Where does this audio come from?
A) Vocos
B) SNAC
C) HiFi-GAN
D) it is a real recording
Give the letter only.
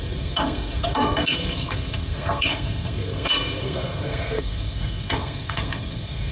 B